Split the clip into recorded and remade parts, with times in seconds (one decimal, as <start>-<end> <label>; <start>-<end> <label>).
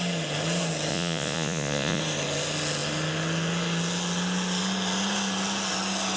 0.0-0.9 recorded; 0.9-2.0 remade; 2.0-6.2 recorded